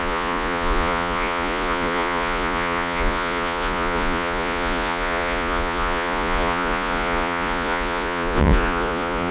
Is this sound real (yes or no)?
no